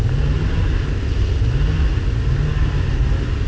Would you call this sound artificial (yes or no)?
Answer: no